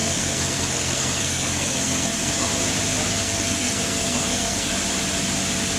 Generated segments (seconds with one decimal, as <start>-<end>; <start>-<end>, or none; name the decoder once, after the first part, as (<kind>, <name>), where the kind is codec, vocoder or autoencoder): 0.0-2.5 (codec, SNAC); 3.1-4.7